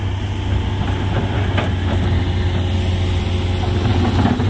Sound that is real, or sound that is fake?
real